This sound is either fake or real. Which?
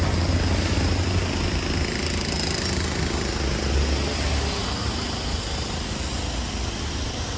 real